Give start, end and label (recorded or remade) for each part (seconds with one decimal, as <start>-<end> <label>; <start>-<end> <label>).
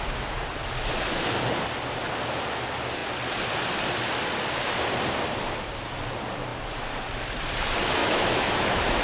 0.0-8.0 recorded; 8.0-9.0 remade